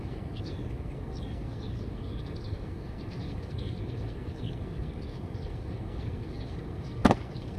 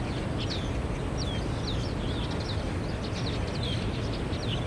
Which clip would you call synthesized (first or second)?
first